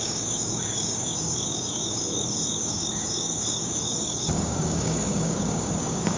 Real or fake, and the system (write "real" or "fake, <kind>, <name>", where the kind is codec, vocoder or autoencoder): fake, codec, DAC